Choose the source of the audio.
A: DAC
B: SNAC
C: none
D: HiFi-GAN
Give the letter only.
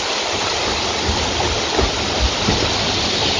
C